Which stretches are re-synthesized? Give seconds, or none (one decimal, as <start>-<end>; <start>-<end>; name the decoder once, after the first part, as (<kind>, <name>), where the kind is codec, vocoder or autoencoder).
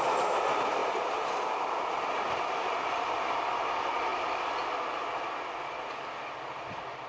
none